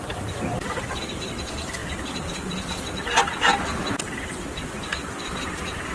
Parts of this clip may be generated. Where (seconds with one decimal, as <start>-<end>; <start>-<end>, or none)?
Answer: none